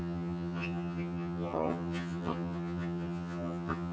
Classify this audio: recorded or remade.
remade